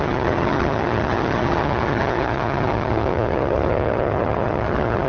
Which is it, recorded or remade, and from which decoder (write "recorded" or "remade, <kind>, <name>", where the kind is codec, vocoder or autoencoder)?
remade, vocoder, HiFi-GAN